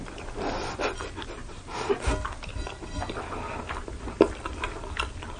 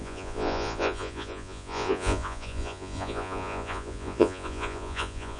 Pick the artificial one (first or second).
second